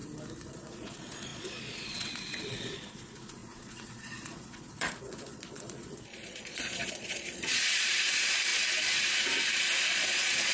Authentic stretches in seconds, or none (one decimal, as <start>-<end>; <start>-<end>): 0.0-0.5; 8.5-9.9